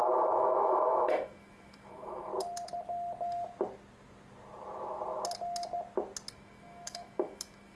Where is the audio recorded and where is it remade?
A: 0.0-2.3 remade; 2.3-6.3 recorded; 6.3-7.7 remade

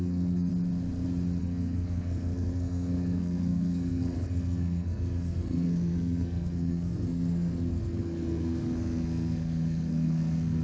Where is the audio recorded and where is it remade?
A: 0.0-0.5 remade; 0.5-1.4 recorded; 1.4-10.6 remade

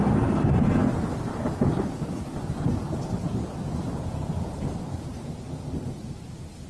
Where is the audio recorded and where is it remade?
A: 0.0-6.7 remade

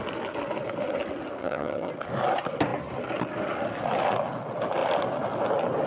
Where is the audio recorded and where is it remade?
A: 0.0-1.4 recorded; 1.4-1.9 remade; 1.9-5.9 recorded